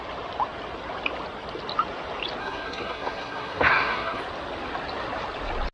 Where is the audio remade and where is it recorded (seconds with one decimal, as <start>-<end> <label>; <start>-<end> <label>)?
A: 0.0-2.4 recorded; 2.4-4.2 remade; 4.2-5.7 recorded